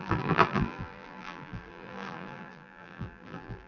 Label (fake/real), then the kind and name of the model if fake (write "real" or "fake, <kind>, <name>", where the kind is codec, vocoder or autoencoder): fake, vocoder, BigVGAN v2